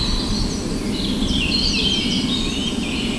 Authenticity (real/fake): real